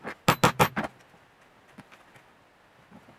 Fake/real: real